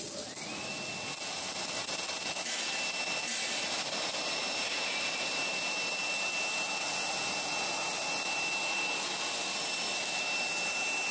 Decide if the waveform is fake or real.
real